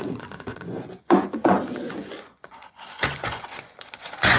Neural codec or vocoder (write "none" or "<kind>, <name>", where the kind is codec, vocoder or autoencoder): vocoder, Vocos